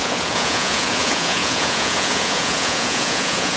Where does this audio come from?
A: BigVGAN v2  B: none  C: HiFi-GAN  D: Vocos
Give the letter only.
D